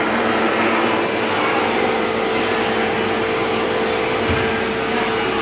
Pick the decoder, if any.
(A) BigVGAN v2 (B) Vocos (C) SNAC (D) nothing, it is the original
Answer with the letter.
D